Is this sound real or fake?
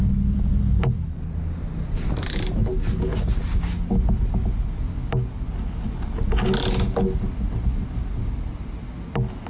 real